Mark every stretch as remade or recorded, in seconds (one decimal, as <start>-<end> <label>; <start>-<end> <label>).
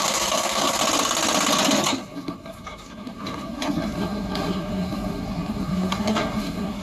0.0-0.8 remade; 0.8-1.9 recorded; 1.9-6.8 remade